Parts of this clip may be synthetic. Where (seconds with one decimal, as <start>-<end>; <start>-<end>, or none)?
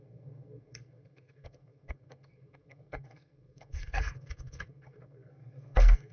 0.0-6.1